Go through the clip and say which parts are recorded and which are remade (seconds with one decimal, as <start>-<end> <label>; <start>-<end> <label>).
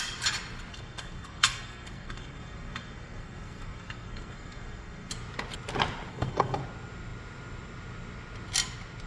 0.0-0.7 recorded; 0.7-5.1 remade; 5.1-6.1 recorded; 6.1-6.6 remade; 6.6-9.1 recorded